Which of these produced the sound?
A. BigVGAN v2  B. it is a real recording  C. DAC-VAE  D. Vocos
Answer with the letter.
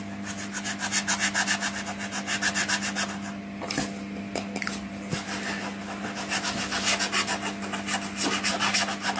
B